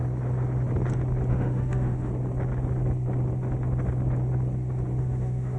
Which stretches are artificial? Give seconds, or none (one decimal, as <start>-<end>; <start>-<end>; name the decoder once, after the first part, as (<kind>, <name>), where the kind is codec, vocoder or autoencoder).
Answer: 1.3-2.1 (autoencoder, DAC-VAE); 5.0-5.6